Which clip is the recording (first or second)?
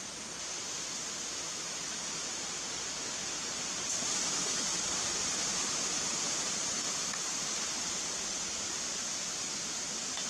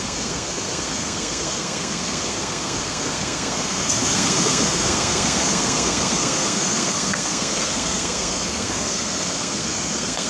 first